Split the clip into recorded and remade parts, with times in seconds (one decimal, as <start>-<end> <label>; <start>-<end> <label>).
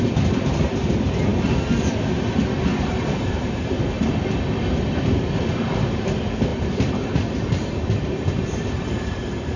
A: 0.0-2.7 recorded; 2.7-3.8 remade; 3.8-6.5 recorded; 6.5-9.6 remade